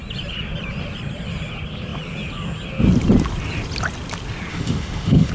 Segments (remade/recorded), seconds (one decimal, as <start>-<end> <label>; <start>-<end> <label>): 0.0-4.5 recorded; 4.5-5.3 remade